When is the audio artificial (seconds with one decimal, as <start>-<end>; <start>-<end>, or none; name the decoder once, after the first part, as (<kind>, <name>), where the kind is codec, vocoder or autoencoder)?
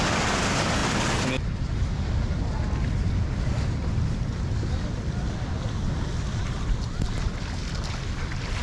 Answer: none